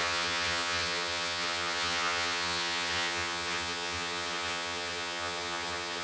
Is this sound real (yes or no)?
no